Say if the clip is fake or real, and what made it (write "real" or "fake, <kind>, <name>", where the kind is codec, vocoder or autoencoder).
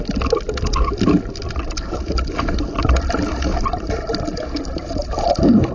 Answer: real